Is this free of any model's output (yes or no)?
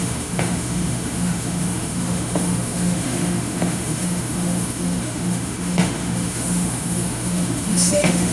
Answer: no